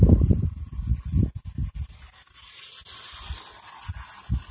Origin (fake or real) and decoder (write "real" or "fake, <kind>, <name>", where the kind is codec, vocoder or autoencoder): real